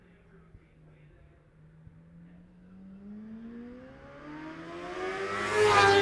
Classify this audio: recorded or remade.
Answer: recorded